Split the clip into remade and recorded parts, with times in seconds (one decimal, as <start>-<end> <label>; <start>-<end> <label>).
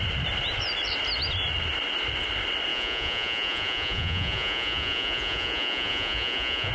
0.0-2.7 recorded; 2.7-6.7 remade